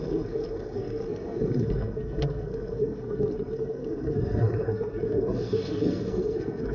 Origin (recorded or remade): remade